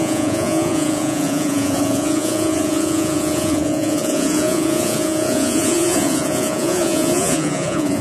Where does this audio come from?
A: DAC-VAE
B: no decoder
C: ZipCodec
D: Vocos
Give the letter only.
D